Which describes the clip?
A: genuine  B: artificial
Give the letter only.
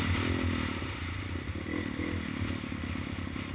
A